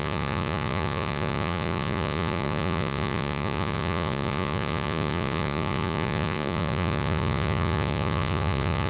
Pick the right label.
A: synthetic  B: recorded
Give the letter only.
A